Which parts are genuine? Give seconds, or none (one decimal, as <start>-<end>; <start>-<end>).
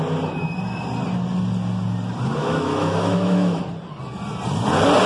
0.0-2.4; 3.6-5.1